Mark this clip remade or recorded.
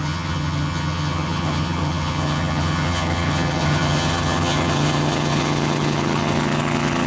remade